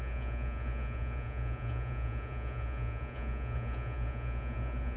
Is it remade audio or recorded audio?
remade